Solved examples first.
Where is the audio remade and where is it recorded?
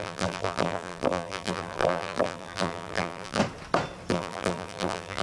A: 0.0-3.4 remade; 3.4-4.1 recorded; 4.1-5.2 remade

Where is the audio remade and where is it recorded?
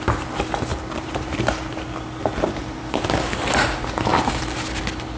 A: 0.0-0.7 recorded; 0.7-3.0 remade; 3.0-5.2 recorded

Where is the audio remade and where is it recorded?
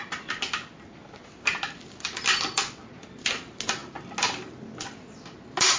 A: 0.0-5.8 recorded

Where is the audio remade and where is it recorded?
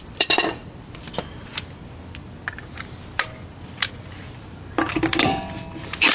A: 0.0-6.1 remade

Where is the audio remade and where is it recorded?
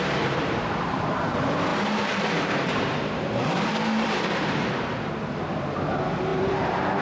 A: 0.0-4.9 remade; 4.9-5.5 recorded; 5.5-7.0 remade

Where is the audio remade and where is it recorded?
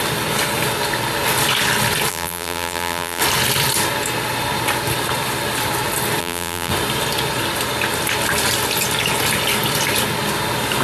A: 0.0-2.1 recorded; 2.1-3.2 remade; 3.2-6.2 recorded; 6.2-6.7 remade; 6.7-10.8 recorded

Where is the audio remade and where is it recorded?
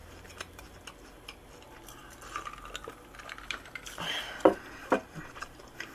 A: 0.0-0.6 remade; 0.6-5.9 recorded